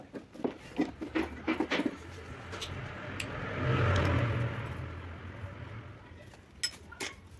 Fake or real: real